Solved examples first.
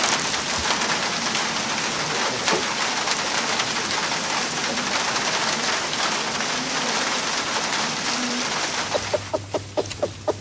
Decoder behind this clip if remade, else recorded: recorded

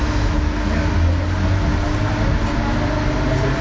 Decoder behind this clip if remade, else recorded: recorded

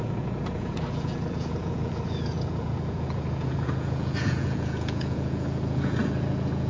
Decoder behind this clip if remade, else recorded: remade, vocoder, Vocos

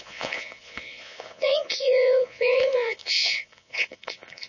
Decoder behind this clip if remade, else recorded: remade, vocoder, Vocos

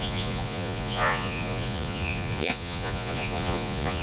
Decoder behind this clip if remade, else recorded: remade, vocoder, Vocos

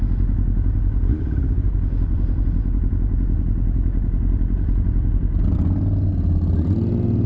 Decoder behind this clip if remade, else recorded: recorded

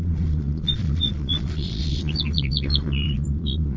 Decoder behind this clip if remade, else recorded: remade, vocoder, Vocos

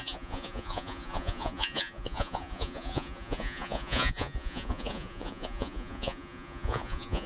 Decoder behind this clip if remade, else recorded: remade, vocoder, Vocos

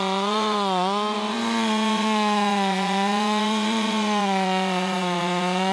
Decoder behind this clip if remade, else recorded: remade, vocoder, Vocos